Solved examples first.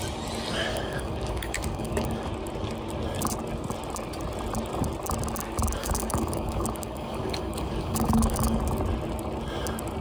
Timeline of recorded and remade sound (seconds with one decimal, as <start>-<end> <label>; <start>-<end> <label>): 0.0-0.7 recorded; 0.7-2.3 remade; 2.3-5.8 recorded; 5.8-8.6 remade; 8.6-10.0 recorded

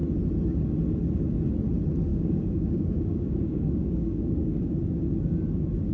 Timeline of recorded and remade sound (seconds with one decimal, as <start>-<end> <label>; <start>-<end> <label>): 0.0-2.1 recorded; 2.1-4.7 remade; 4.7-5.9 recorded

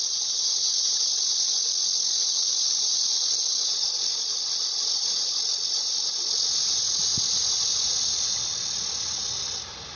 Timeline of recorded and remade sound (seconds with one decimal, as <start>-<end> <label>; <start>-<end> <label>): 0.0-10.0 recorded

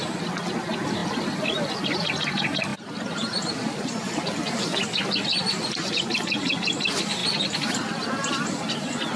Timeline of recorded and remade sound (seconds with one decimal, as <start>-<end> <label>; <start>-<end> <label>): 0.0-9.2 recorded

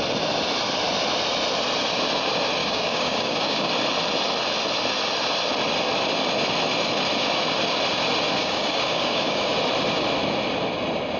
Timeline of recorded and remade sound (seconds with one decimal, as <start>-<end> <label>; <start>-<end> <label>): 0.0-2.6 recorded; 2.6-3.7 remade; 3.7-8.4 recorded; 8.4-9.5 remade; 9.5-11.2 recorded

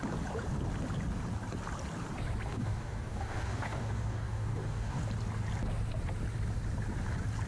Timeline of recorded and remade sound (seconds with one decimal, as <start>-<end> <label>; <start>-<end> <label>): 0.0-2.5 recorded; 2.5-5.0 remade; 5.0-7.5 recorded

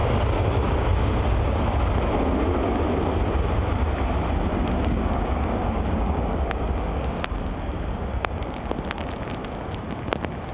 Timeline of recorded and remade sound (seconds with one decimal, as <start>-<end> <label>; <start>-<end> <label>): 0.0-1.8 remade; 1.8-4.5 recorded; 4.5-8.7 remade; 8.7-10.5 recorded

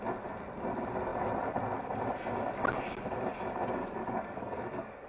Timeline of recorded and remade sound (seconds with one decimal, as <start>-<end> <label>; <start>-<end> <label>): 0.0-3.8 recorded; 3.8-5.1 remade